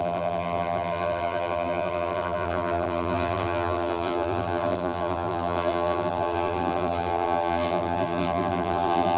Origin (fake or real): fake